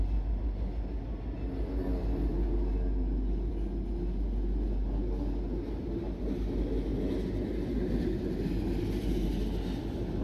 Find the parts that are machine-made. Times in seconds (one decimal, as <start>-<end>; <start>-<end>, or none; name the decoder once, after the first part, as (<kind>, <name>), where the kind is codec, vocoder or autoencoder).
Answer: none